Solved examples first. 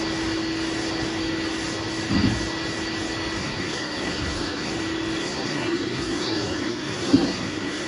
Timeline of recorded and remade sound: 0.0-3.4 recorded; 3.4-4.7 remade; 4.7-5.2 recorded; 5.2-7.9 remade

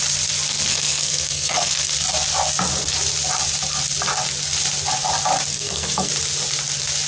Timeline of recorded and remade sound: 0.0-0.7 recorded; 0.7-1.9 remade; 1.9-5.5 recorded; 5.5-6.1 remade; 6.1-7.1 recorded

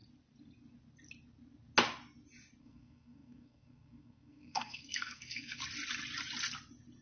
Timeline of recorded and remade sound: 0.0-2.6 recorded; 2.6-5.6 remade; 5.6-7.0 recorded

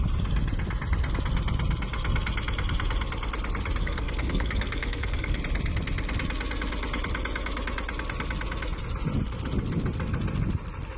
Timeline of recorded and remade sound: 0.0-3.8 recorded; 3.8-5.4 remade; 5.4-11.0 recorded

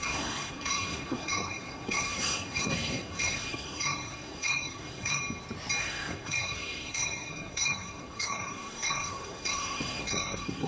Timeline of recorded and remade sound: 0.0-5.2 remade; 5.2-5.8 recorded; 5.8-10.7 remade

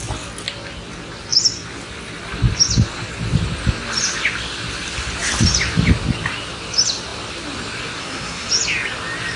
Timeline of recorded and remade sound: 0.0-8.0 recorded; 8.0-8.5 remade; 8.5-9.4 recorded

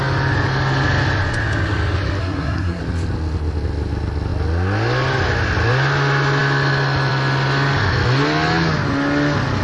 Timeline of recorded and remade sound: 0.0-2.2 recorded; 2.2-2.8 remade; 2.8-9.6 recorded

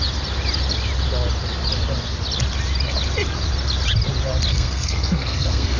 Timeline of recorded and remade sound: 0.0-4.5 recorded; 4.5-5.8 remade